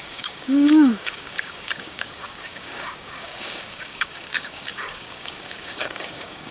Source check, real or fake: fake